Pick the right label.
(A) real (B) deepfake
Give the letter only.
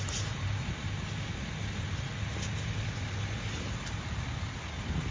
A